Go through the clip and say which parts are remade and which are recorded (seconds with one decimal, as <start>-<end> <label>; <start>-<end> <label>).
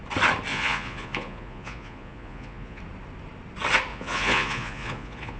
0.0-0.5 recorded; 0.5-2.8 remade; 2.8-3.9 recorded; 3.9-5.4 remade